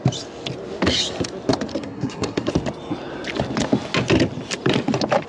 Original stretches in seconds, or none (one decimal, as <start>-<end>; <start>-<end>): 0.0-1.7; 2.5-5.3